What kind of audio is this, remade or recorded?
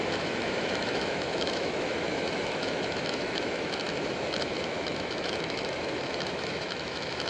remade